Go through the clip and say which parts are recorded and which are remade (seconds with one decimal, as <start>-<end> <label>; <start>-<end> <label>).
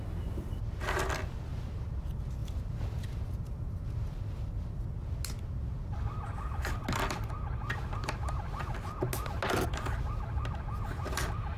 0.0-1.5 recorded; 1.5-2.0 remade; 2.0-2.4 recorded; 2.4-4.5 remade; 4.5-11.6 recorded